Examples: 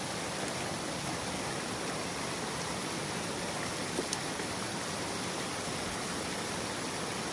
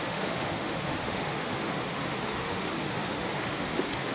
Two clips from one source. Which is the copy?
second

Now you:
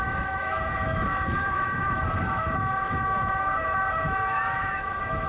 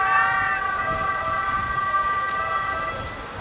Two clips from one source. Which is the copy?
first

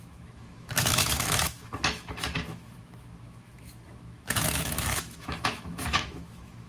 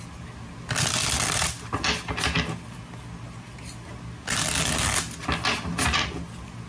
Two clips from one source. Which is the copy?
first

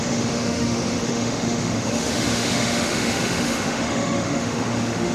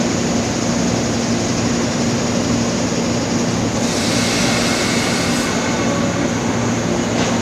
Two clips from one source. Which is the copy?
first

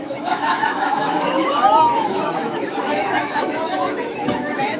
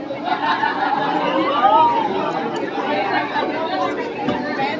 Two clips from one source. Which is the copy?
first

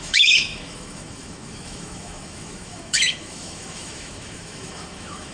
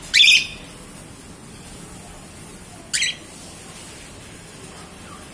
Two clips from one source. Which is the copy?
first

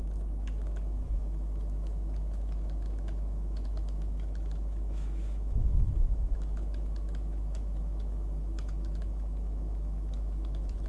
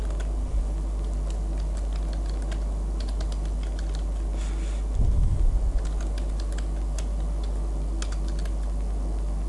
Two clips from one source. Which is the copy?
first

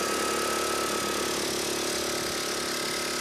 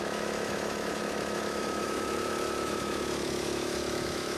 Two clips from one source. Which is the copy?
second